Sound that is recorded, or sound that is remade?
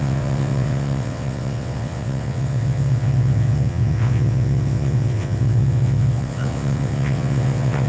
remade